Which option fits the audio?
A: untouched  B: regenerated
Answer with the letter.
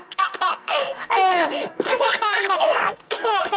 B